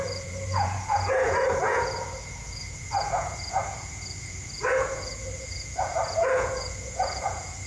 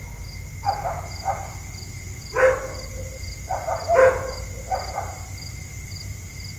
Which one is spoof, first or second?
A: first